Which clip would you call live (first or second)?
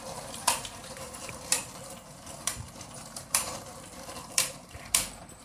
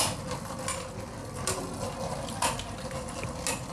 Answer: second